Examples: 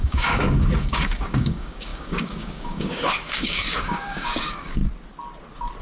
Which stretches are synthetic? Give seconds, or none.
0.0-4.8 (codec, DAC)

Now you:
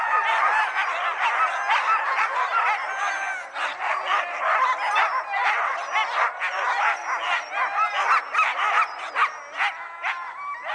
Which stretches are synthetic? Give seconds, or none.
none

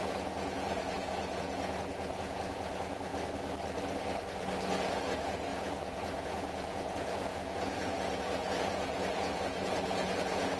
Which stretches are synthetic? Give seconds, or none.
0.0-3.1 (vocoder, Vocos); 4.9-10.6

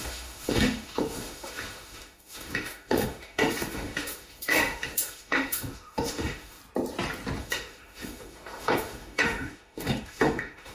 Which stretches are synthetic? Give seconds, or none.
0.0-6.6 (autoencoder, DAC-VAE); 7.4-10.7

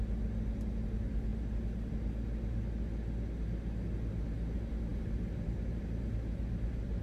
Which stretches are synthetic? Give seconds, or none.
none